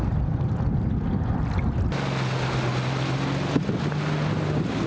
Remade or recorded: recorded